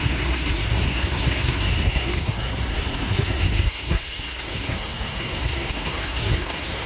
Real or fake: fake